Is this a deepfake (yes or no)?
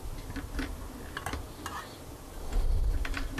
no